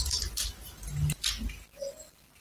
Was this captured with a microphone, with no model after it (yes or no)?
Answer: yes